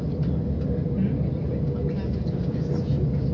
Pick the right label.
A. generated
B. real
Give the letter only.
B